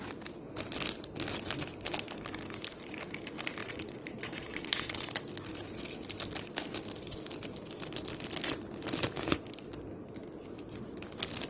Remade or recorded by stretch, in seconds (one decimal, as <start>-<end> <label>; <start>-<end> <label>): 0.0-3.6 recorded; 3.6-5.2 remade; 5.2-11.5 recorded